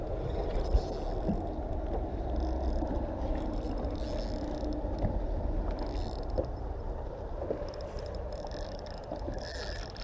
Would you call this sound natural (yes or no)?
yes